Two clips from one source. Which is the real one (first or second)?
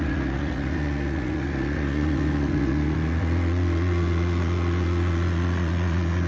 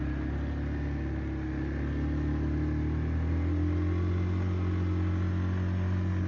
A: second